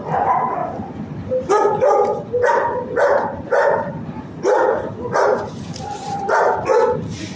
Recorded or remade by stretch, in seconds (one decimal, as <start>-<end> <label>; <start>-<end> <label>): 0.0-0.6 recorded; 0.6-1.5 remade; 1.5-2.1 recorded; 2.1-6.5 remade; 6.5-7.4 recorded